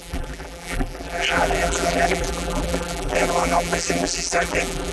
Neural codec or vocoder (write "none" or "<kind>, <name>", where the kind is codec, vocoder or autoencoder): vocoder, BigVGAN v2